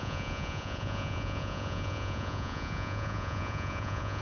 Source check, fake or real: fake